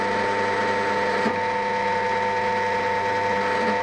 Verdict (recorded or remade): recorded